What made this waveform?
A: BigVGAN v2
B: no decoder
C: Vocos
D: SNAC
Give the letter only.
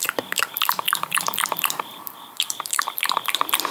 A